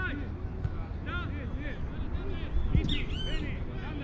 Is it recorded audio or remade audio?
recorded